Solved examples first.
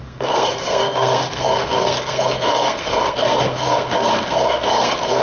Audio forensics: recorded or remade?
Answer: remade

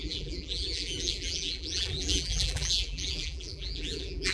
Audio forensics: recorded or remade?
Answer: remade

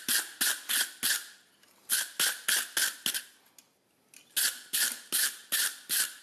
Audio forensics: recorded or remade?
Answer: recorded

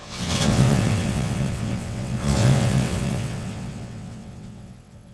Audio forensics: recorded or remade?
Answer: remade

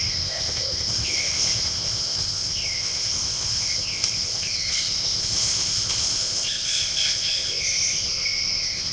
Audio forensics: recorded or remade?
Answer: remade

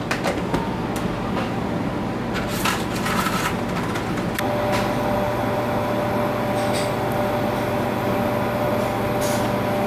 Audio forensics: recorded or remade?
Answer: recorded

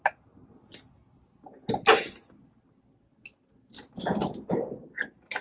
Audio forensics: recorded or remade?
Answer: recorded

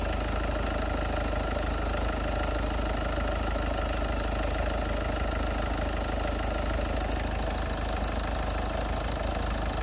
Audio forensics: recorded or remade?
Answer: recorded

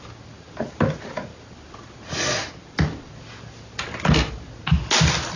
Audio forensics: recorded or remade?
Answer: recorded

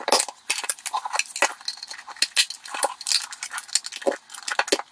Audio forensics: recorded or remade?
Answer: recorded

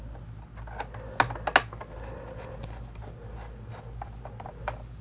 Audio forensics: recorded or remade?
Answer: recorded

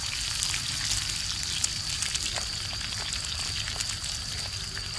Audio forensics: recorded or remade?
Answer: recorded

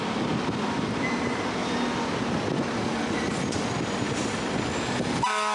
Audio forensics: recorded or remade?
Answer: recorded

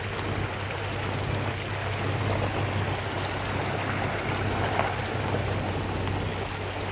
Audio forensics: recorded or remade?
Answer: recorded